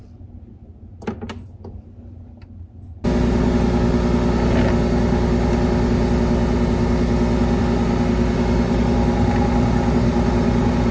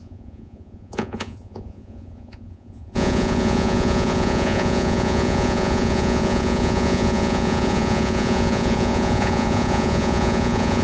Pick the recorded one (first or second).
first